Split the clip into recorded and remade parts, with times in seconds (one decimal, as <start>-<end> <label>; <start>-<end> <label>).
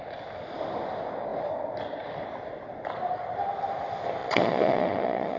0.0-4.2 recorded; 4.2-5.4 remade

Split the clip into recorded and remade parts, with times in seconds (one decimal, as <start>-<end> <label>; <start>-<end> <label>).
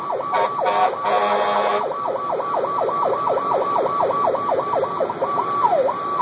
0.0-6.2 recorded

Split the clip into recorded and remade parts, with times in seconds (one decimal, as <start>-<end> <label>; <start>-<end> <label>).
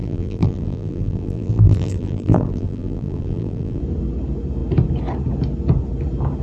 0.0-3.8 remade; 3.8-6.4 recorded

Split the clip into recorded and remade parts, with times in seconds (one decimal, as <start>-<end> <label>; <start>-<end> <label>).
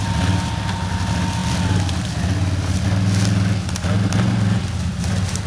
0.0-5.5 recorded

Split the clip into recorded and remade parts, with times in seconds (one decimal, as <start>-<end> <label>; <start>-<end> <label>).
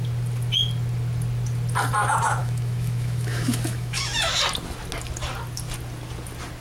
0.0-2.4 recorded; 2.4-4.3 remade; 4.3-6.6 recorded